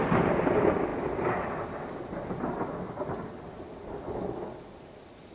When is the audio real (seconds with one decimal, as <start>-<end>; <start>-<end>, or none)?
0.0-5.3